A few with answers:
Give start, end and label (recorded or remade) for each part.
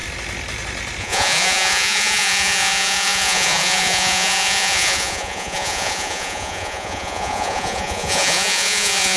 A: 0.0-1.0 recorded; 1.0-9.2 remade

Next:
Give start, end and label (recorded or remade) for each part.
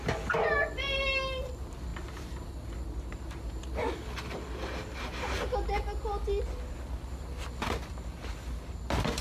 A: 0.0-9.2 recorded